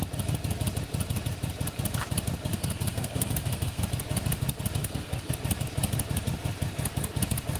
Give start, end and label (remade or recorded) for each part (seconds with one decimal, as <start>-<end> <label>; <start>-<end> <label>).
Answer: 0.0-2.5 recorded; 2.5-3.8 remade; 3.8-4.8 recorded; 4.8-5.3 remade; 5.3-7.6 recorded